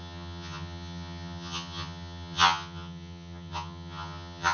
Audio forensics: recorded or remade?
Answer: remade